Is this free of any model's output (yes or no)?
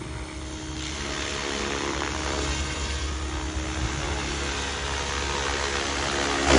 yes